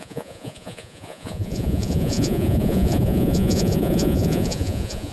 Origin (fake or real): fake